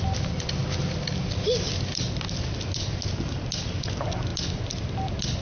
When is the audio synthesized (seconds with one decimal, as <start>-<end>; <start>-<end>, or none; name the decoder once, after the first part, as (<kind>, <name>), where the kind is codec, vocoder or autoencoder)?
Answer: none